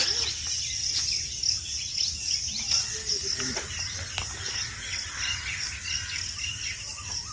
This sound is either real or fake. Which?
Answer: real